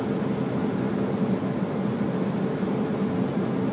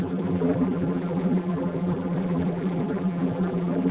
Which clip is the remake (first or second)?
second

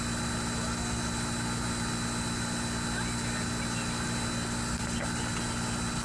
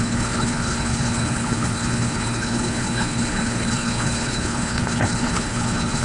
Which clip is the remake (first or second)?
second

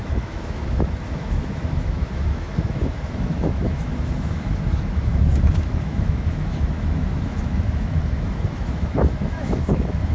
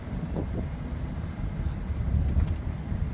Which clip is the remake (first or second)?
first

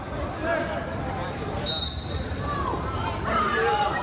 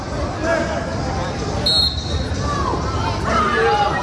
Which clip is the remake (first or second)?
first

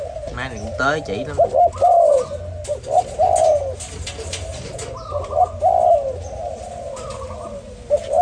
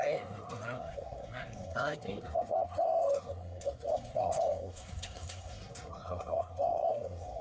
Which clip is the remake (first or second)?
second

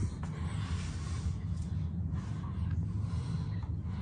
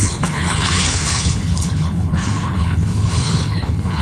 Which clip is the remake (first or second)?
second